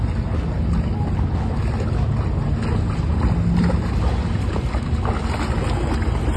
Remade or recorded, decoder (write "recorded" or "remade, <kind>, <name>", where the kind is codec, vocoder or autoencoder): recorded